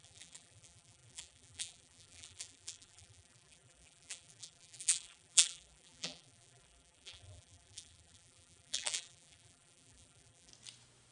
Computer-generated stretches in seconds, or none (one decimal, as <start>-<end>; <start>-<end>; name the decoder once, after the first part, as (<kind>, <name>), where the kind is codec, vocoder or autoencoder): 0.0-10.5 (vocoder, BigVGAN v2)